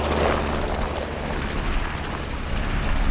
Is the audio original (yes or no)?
yes